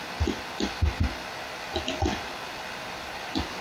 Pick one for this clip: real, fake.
real